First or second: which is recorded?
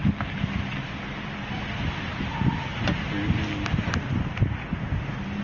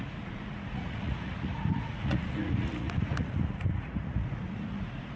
first